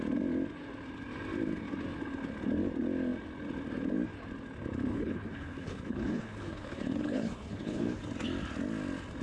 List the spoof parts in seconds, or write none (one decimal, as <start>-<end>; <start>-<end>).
4.9-8.0